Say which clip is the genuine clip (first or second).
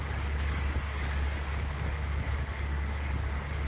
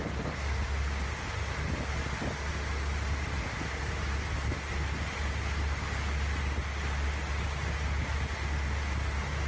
second